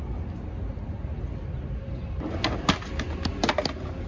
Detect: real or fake real